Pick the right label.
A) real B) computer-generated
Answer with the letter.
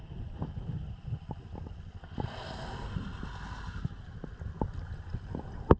A